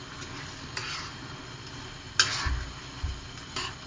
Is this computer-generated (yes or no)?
no